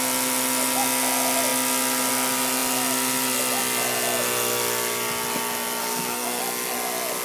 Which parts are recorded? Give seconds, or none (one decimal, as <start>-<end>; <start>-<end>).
0.0-5.8; 6.4-7.2